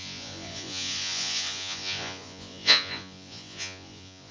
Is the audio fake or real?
fake